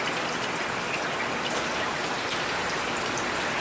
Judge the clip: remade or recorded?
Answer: recorded